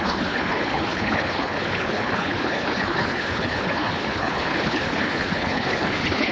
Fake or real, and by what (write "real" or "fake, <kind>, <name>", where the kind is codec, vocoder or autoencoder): fake, codec, HILCodec